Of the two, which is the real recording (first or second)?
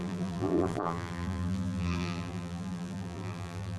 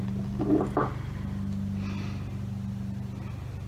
second